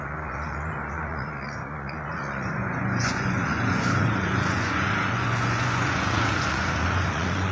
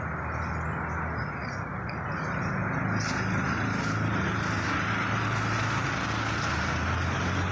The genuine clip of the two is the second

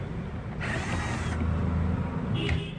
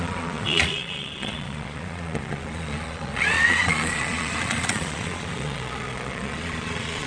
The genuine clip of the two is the first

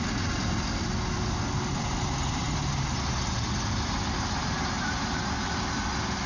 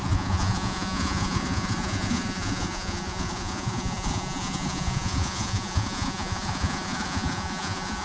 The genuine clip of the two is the first